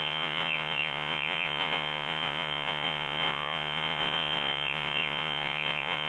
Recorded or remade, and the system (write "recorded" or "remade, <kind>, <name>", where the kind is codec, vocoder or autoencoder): remade, vocoder, Vocos